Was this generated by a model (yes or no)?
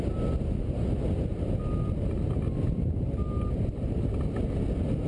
no